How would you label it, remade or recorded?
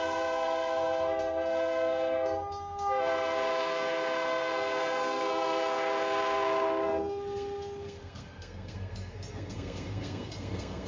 remade